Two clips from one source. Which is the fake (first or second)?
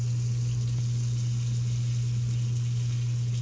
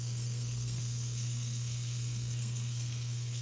second